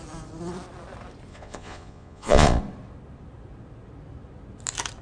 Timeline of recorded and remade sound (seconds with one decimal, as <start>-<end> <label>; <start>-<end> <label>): 0.0-1.3 recorded; 1.3-2.6 remade; 2.6-5.0 recorded